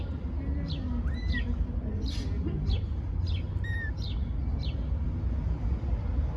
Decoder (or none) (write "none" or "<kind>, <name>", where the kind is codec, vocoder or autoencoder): none